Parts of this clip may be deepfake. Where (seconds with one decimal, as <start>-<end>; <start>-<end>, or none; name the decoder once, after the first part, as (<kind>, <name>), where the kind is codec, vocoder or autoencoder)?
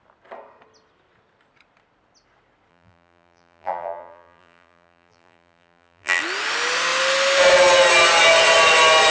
2.7-6.2 (vocoder, BigVGAN v2)